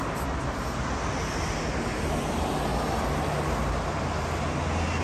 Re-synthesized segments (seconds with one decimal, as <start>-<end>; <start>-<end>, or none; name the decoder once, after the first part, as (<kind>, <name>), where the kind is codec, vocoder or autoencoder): none